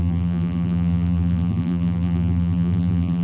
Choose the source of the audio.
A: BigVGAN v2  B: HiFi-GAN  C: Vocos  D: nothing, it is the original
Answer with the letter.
A